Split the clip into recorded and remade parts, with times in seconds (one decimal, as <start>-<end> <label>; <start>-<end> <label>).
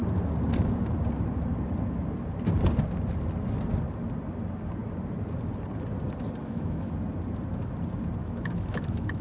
0.0-6.4 recorded; 6.4-6.9 remade; 6.9-8.2 recorded; 8.2-9.2 remade